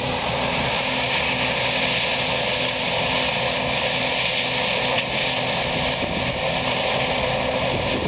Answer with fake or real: real